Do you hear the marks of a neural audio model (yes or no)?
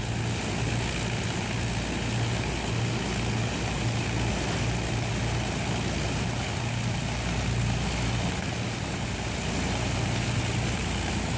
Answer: no